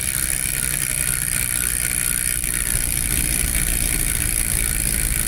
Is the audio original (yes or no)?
no